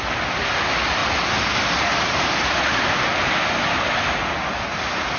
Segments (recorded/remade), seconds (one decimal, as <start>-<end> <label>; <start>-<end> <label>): 0.0-5.2 recorded